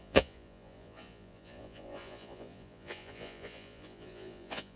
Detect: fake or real fake